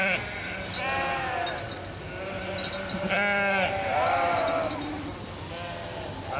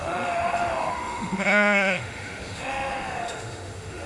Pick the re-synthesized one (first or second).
second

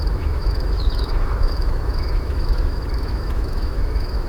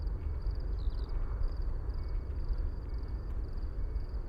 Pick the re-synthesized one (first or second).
first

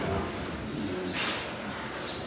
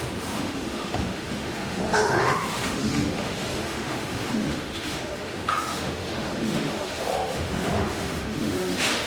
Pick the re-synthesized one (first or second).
second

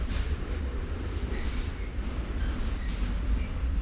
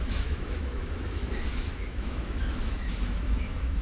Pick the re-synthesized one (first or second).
second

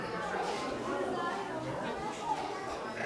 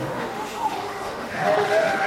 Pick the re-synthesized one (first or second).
second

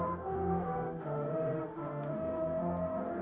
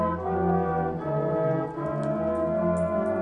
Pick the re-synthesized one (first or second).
first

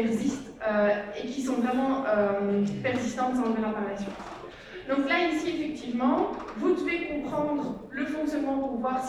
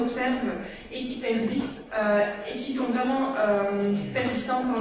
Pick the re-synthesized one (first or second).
second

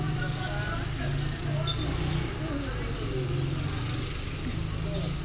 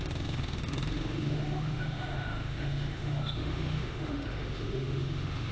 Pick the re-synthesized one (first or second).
second